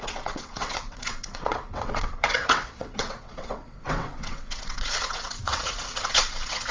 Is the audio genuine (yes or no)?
no